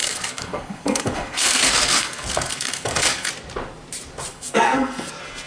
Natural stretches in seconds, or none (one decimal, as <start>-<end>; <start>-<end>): 3.3-4.3; 5.1-5.5